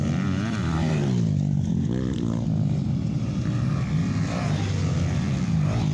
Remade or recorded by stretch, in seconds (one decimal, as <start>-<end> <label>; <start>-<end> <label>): 0.0-5.9 recorded